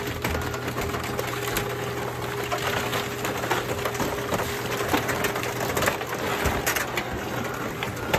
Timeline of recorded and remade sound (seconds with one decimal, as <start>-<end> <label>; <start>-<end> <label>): 0.0-8.2 recorded